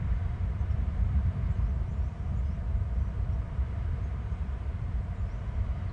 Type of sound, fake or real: fake